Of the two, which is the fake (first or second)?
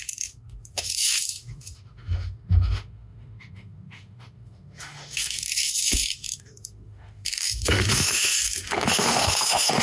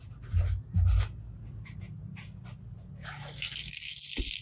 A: first